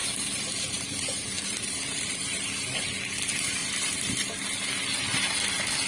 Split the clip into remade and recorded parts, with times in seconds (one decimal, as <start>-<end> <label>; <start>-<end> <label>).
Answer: 0.0-3.0 remade; 3.0-3.6 recorded; 3.6-4.4 remade; 4.4-5.9 recorded